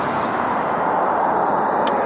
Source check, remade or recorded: recorded